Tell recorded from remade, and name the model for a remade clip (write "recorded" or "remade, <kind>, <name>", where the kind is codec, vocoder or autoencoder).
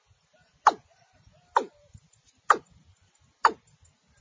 recorded